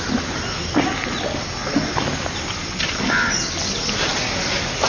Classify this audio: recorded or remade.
recorded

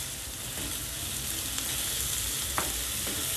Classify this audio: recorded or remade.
recorded